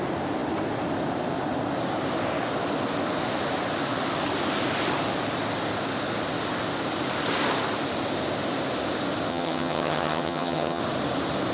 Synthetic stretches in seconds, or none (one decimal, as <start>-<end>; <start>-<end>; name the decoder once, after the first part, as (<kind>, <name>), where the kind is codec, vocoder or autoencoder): 9.3-10.8 (vocoder, HiFi-GAN)